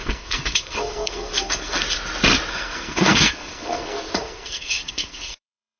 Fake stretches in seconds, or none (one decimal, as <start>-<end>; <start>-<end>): 0.0-1.8; 2.5-5.8